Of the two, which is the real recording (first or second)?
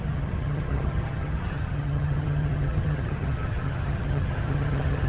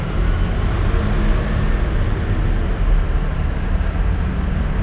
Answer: second